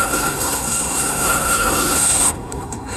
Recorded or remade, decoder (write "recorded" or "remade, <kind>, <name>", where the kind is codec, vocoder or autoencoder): remade, codec, SNAC